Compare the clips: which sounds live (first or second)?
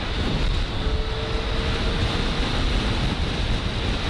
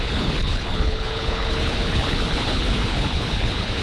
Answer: first